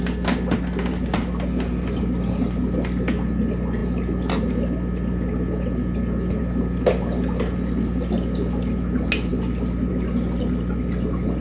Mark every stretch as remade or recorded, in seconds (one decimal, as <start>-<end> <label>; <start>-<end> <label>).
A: 0.0-11.4 recorded

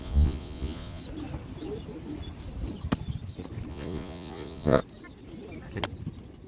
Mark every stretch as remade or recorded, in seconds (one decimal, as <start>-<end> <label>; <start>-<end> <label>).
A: 0.0-1.0 remade; 1.0-3.7 recorded; 3.7-4.8 remade; 4.8-6.5 recorded

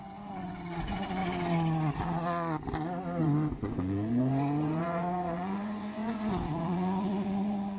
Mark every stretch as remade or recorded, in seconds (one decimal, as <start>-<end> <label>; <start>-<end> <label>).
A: 0.0-1.2 remade; 1.2-3.2 recorded; 3.2-7.8 remade

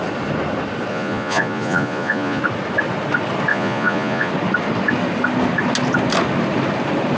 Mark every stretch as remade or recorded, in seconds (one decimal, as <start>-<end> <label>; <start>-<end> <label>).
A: 0.0-0.9 recorded; 0.9-2.4 remade; 2.4-3.5 recorded; 3.5-4.3 remade; 4.3-7.2 recorded

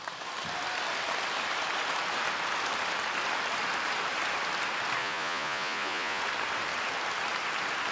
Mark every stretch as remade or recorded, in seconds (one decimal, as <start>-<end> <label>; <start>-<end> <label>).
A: 0.0-5.0 recorded; 5.0-6.2 remade; 6.2-7.9 recorded

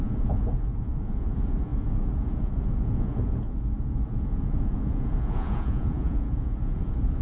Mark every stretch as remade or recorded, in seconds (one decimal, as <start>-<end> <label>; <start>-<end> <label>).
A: 0.0-7.2 remade

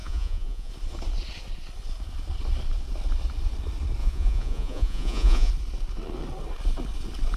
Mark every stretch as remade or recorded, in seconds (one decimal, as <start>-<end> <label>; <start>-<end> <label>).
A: 0.0-0.7 remade; 0.7-4.0 recorded; 4.0-5.5 remade; 5.5-7.4 recorded